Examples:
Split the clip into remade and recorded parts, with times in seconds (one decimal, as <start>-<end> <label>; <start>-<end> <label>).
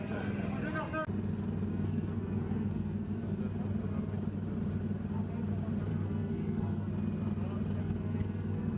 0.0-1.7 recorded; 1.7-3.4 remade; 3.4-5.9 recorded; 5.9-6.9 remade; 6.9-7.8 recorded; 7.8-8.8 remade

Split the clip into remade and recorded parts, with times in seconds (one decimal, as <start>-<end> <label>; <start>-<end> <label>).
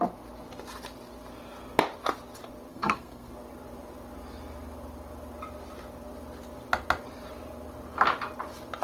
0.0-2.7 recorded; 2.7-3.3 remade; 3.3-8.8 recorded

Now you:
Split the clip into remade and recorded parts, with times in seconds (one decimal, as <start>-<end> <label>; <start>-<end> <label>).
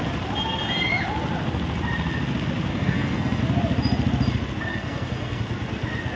0.0-2.7 recorded; 2.7-3.4 remade; 3.4-4.7 recorded; 4.7-5.4 remade; 5.4-6.2 recorded